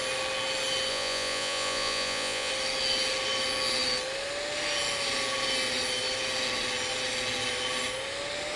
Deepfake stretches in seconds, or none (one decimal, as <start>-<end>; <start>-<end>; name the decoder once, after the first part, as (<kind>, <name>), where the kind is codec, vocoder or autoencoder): 0.9-2.5 (vocoder, Vocos)